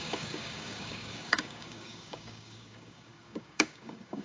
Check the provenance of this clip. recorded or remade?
remade